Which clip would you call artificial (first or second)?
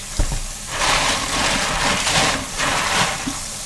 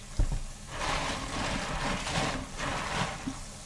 first